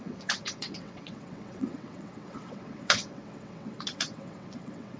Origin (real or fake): fake